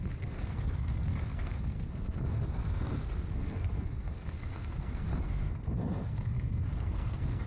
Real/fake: fake